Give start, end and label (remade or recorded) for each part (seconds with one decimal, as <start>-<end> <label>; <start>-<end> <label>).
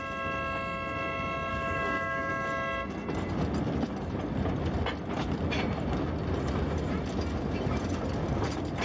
0.0-1.5 recorded; 1.5-2.3 remade; 2.3-8.8 recorded